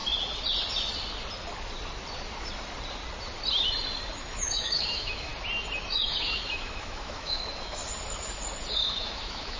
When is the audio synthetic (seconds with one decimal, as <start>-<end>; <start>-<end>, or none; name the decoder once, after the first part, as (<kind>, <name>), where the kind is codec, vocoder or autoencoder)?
4.1-5.3 (autoencoder, DAC-VAE); 5.8-7.8; 8.7-9.6